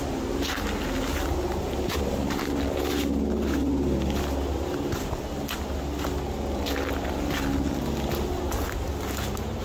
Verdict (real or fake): real